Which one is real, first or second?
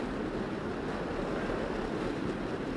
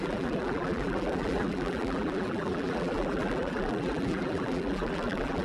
first